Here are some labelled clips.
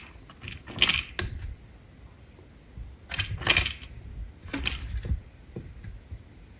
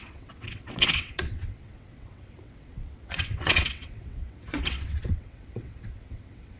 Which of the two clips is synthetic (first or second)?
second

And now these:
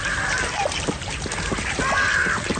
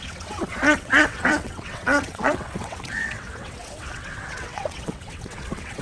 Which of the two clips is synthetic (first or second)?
second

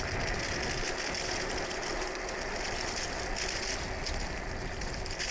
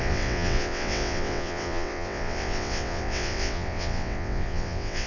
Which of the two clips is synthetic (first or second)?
second